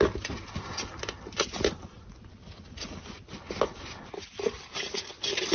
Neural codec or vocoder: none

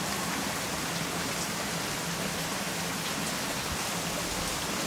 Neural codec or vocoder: none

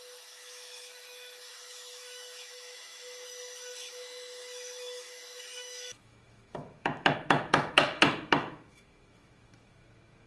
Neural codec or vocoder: autoencoder, DAC-VAE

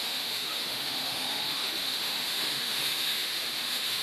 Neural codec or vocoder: autoencoder, DAC-VAE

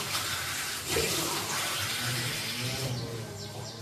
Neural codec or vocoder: none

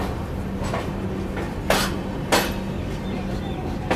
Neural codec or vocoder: none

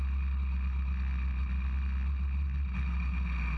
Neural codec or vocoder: none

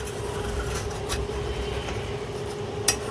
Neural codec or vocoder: none